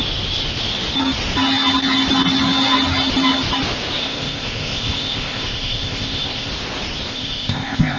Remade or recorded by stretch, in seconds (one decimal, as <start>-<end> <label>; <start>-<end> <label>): 0.0-4.0 recorded; 4.0-6.5 remade; 6.5-7.1 recorded; 7.1-8.0 remade